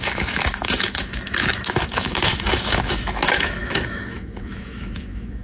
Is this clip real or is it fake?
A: fake